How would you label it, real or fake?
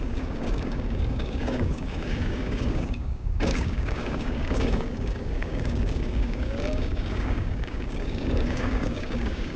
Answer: fake